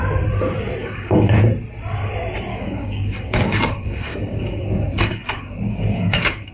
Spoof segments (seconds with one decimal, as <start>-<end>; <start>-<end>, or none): 0.8-1.4; 2.5-6.5

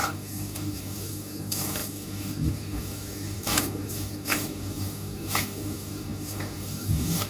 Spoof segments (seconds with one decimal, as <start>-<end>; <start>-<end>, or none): 0.0-7.3